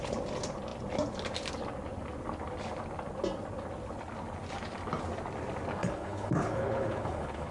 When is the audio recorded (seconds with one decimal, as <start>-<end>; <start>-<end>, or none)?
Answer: 0.0-5.8